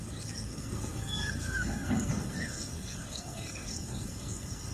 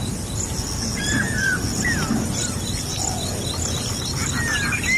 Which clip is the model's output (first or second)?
first